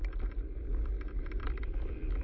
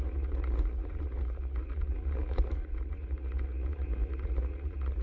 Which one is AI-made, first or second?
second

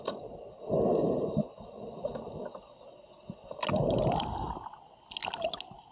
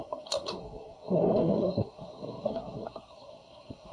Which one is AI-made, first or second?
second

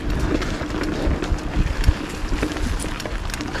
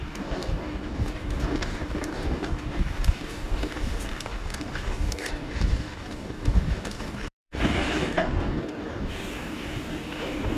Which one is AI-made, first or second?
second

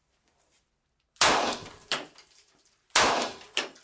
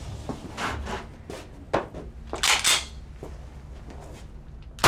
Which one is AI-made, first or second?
first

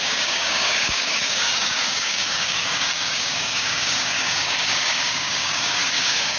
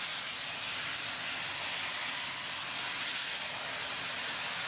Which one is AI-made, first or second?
first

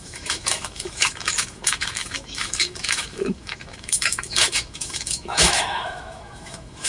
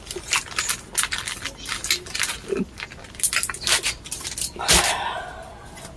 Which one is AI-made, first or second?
first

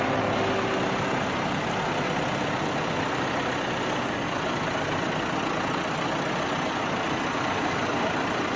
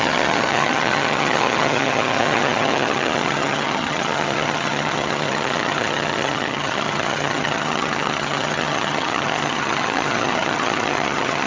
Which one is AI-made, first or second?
second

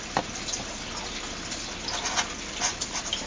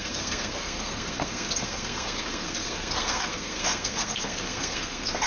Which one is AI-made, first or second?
second